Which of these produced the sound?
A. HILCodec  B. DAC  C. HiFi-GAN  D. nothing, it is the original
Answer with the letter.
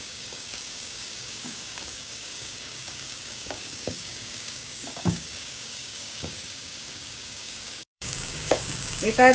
B